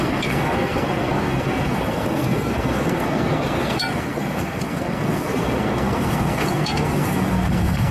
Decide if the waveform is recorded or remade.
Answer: remade